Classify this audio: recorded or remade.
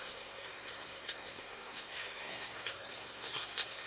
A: remade